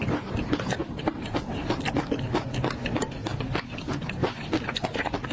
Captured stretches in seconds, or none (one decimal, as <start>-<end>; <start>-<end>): 3.2-4.2; 4.7-5.3